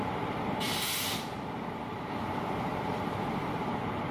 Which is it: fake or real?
fake